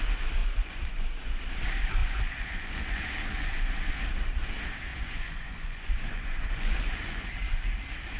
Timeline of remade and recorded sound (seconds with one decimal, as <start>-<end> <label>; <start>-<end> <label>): 0.0-0.4 recorded; 0.4-1.4 remade; 1.4-2.0 recorded; 2.0-3.9 remade; 3.9-4.9 recorded; 4.9-7.3 remade; 7.3-8.2 recorded